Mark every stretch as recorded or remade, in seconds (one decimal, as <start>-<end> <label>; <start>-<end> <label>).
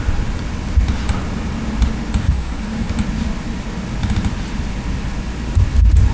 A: 0.0-2.2 recorded; 2.2-2.9 remade; 2.9-6.1 recorded